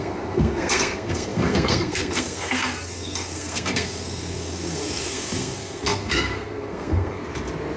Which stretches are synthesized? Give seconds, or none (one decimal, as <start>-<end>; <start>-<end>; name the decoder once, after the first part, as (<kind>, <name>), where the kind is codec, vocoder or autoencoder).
0.0-7.2 (codec, SNAC)